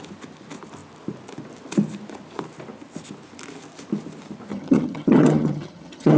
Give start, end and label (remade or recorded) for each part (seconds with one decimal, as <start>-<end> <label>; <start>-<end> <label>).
0.0-4.5 recorded; 4.5-6.2 remade